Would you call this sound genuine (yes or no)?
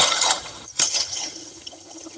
no